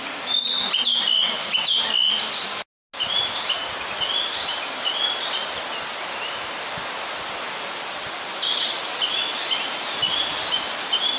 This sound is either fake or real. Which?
real